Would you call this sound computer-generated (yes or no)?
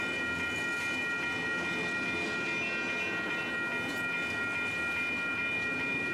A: no